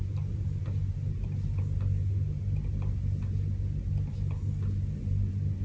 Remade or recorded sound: recorded